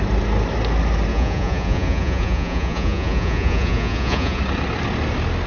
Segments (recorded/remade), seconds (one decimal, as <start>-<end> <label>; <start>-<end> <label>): 0.0-1.1 recorded; 1.1-4.4 remade; 4.4-5.5 recorded